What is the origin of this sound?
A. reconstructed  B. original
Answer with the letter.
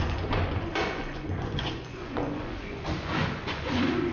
A